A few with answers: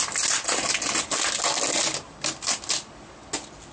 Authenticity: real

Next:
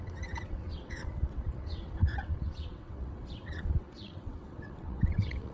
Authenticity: fake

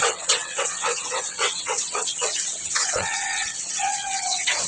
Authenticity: fake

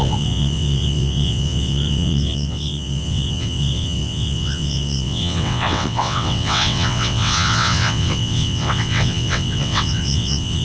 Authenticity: fake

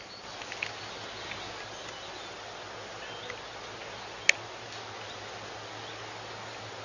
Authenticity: real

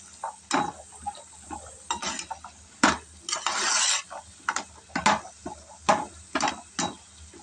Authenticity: real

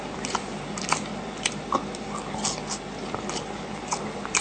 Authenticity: real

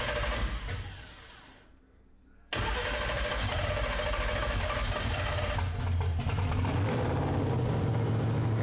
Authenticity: real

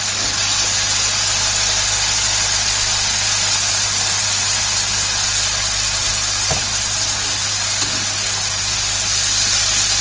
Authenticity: real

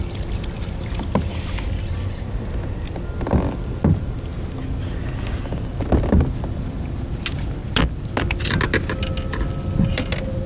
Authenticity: real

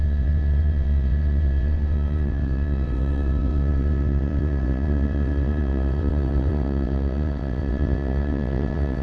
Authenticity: fake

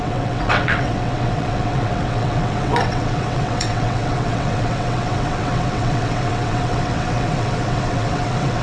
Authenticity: fake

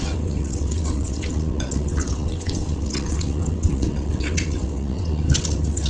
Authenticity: fake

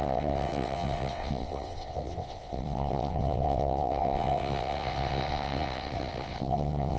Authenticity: fake